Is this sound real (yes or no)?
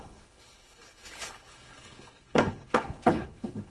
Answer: no